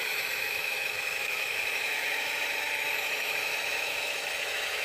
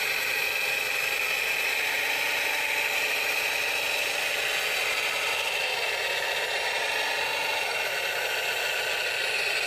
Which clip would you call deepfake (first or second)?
first